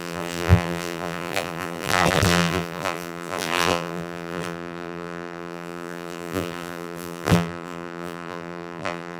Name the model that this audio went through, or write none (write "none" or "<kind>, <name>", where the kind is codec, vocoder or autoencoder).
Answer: vocoder, BigVGAN v2